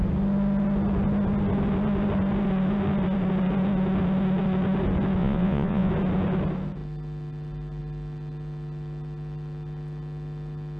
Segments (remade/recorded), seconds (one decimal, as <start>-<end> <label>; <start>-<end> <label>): 0.0-5.2 recorded; 5.2-5.9 remade; 5.9-10.8 recorded